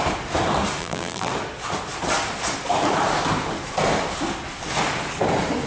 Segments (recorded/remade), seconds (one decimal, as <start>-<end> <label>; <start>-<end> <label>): 0.0-0.8 recorded; 0.8-1.3 remade; 1.3-5.7 recorded